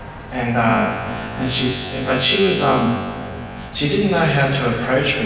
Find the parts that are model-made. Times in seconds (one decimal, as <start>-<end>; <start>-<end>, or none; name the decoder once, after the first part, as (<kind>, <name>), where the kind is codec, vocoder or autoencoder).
0.7-3.7 (vocoder, Vocos)